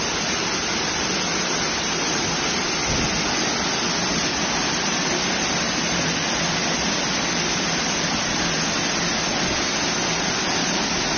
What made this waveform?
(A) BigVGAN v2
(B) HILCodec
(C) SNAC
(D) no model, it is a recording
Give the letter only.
D